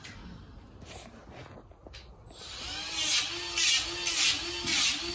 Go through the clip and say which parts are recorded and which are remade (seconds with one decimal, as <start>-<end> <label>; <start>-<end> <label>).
0.0-5.1 recorded